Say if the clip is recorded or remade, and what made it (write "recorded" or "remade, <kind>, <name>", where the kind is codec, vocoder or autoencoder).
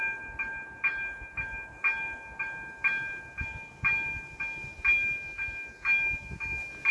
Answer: recorded